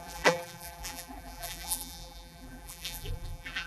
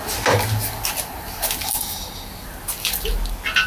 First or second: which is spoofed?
first